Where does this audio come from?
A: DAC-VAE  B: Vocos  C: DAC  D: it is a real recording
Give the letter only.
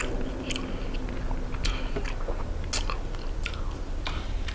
D